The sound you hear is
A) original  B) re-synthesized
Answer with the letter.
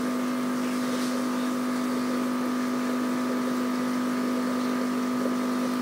A